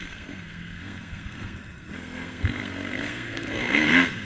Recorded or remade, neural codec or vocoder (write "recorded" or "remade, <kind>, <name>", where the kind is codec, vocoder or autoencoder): remade, codec, SNAC